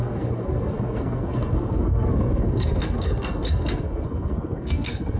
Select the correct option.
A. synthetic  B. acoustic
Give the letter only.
A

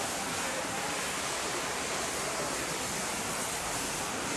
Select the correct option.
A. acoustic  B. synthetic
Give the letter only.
B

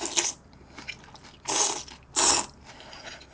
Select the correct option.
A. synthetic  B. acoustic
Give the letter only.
B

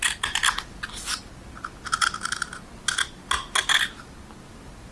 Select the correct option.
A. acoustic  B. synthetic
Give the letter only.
A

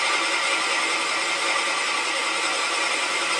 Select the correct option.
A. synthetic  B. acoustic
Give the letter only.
B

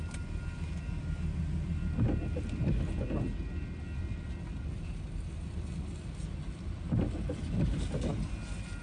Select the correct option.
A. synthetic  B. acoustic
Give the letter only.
B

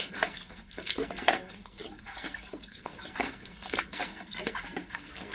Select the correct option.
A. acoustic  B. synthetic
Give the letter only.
B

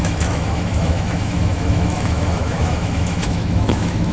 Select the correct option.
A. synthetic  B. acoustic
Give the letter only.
A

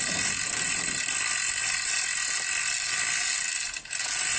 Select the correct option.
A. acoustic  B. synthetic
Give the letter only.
A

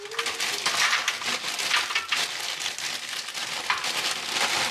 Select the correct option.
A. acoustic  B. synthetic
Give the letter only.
A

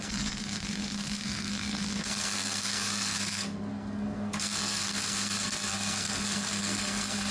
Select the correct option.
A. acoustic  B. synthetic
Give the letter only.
B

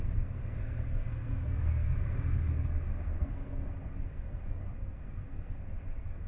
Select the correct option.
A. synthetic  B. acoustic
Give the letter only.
A